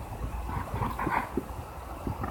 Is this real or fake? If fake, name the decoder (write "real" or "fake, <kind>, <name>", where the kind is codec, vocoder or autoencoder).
real